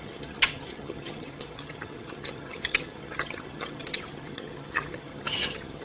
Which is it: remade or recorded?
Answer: remade